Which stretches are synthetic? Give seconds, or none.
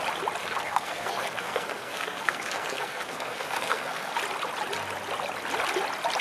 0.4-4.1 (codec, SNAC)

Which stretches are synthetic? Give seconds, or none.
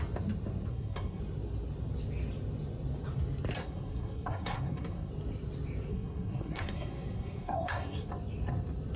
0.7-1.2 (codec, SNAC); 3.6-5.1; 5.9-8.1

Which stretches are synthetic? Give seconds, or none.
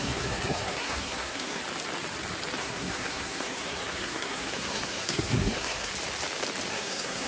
0.0-1.6 (codec, SNAC); 2.6-5.9; 6.7-7.3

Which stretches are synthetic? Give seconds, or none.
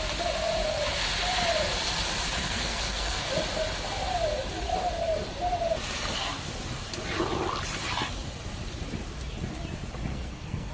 2.4-3.3 (codec, SNAC); 10.1-10.7